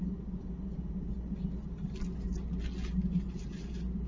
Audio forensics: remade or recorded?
recorded